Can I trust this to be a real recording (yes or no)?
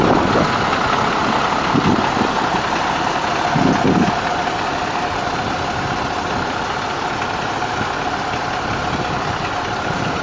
yes